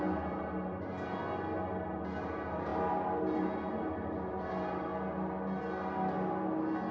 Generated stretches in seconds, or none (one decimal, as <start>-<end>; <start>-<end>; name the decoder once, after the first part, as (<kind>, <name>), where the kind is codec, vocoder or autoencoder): 0.0-1.2 (vocoder, BigVGAN v2); 2.2-4.9